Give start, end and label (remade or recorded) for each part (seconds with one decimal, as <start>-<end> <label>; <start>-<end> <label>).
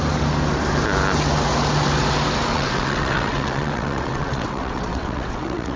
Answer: 0.0-2.5 recorded; 2.5-5.8 remade